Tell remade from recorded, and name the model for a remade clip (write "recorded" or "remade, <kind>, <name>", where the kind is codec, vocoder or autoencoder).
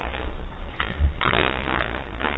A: remade, vocoder, Vocos